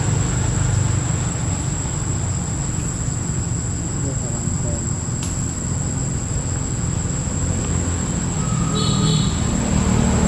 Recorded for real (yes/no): yes